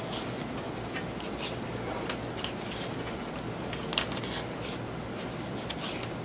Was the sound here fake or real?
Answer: real